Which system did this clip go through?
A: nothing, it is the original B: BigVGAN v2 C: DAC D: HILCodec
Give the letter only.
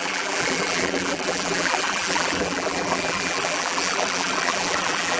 B